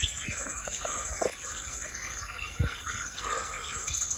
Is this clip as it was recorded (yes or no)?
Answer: no